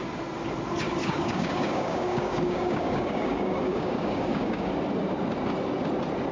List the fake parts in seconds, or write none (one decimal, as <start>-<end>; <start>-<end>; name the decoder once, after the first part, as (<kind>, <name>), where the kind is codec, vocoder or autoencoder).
1.0-4.7 (codec, DAC)